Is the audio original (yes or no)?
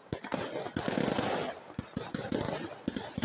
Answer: yes